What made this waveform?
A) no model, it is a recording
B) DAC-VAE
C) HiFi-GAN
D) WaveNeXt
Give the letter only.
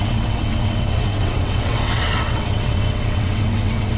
D